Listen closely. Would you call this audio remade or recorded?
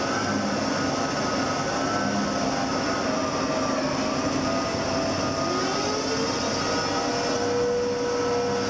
recorded